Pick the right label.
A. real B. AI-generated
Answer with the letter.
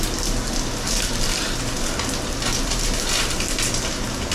A